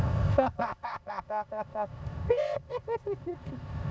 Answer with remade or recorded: remade